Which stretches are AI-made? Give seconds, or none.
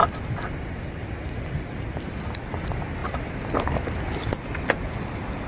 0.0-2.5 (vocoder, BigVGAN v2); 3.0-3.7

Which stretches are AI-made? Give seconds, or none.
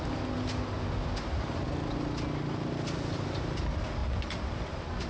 none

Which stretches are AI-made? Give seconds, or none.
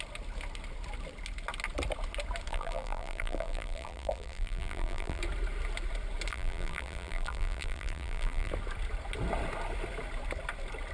2.5-5.2 (vocoder, BigVGAN v2); 6.3-8.5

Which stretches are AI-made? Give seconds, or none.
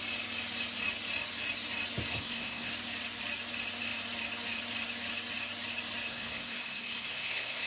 2.1-2.7 (codec, SNAC); 6.1-7.7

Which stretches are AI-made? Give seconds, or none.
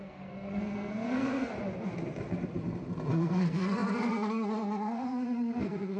0.0-1.5 (codec, SNAC); 3.1-6.0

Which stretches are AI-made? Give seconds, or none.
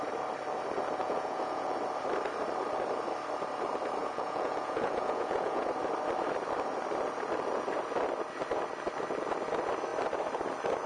1.0-1.8 (vocoder, Vocos); 4.0-5.7